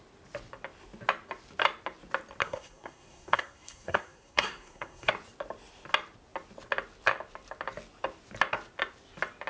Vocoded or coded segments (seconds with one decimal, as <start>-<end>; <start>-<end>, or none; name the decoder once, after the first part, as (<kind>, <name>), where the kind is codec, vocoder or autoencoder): 2.4-5.1 (codec, SNAC)